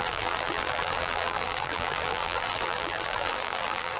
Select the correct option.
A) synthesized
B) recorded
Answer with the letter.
A